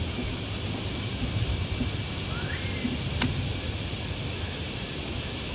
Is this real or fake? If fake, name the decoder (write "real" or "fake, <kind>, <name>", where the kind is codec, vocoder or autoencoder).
real